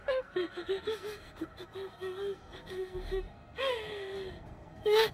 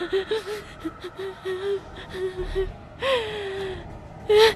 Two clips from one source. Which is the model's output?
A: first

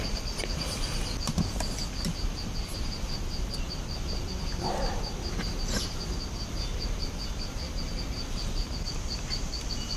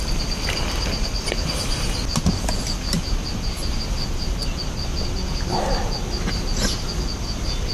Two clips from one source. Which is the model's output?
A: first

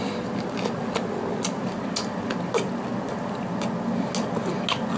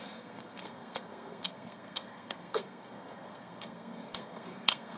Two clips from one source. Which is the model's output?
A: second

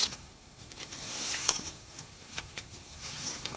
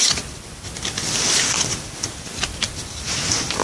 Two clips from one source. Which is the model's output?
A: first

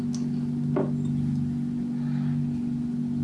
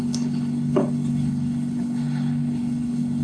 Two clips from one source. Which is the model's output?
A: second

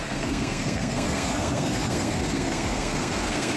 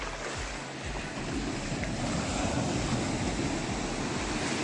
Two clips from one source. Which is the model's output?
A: first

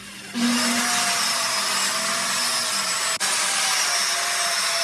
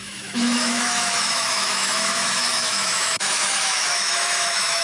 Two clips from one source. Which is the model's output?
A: second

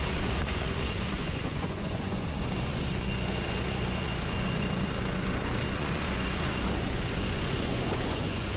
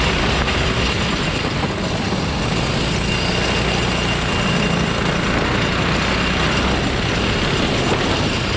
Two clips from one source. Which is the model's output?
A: first